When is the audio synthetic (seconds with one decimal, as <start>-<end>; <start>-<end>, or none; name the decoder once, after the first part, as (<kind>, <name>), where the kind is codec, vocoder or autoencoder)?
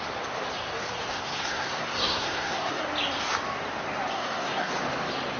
1.1-2.8 (codec, SNAC); 4.1-4.7